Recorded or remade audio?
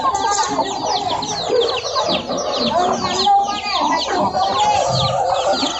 recorded